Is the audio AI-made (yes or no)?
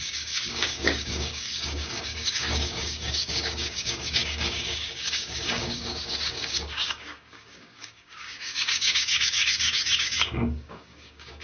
yes